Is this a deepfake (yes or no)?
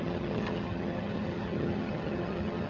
yes